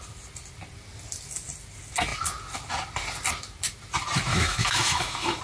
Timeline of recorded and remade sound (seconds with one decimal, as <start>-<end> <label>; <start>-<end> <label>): 0.0-4.3 recorded; 4.3-5.4 remade